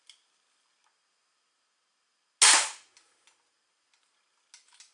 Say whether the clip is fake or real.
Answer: real